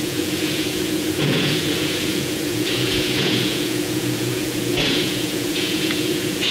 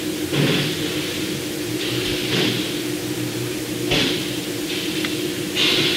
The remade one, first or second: first